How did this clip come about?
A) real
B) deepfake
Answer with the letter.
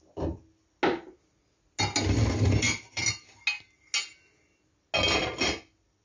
A